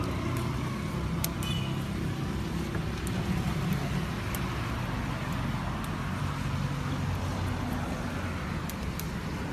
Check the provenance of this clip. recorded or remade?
recorded